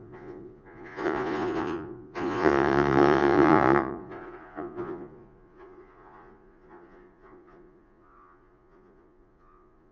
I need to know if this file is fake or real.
fake